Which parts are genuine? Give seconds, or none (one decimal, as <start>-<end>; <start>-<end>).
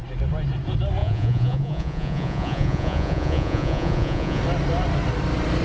0.0-1.0; 4.4-5.6